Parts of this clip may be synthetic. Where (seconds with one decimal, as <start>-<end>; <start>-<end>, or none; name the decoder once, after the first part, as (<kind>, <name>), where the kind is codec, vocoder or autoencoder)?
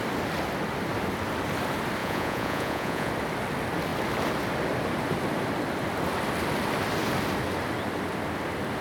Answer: 2.0-3.1 (vocoder, Vocos)